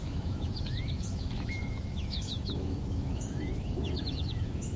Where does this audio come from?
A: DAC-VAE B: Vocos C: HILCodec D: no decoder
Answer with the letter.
A